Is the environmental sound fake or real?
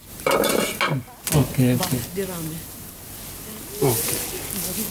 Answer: real